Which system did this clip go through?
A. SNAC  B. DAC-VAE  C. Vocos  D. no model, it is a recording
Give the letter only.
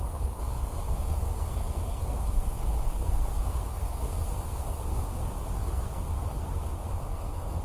A